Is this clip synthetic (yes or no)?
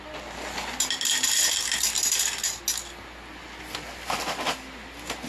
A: no